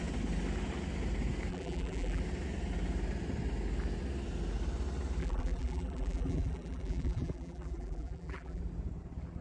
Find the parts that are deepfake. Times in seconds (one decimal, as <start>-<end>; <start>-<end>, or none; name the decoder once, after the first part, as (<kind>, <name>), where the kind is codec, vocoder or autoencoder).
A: 1.5-2.2 (vocoder, BigVGAN v2); 5.2-8.6